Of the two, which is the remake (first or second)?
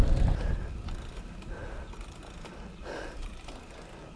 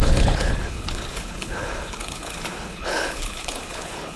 second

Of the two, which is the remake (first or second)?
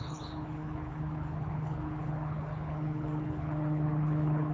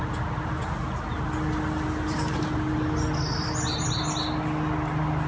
first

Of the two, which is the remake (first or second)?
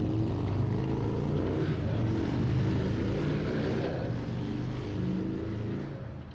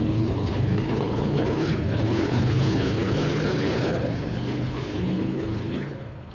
second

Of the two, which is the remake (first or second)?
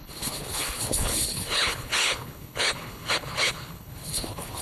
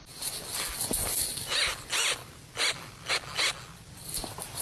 first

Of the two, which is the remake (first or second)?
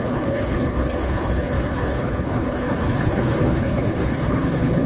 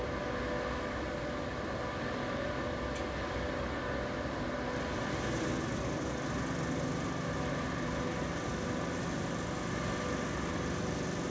first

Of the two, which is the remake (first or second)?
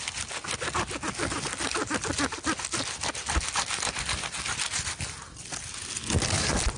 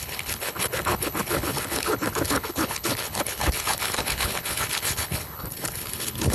second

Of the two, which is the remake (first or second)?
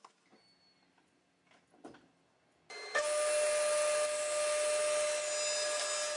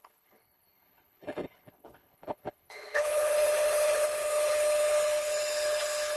second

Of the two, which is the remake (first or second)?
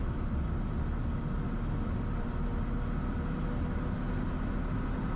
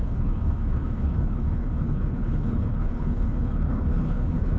second